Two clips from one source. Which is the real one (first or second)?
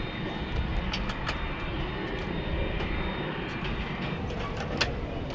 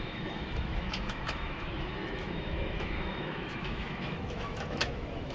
first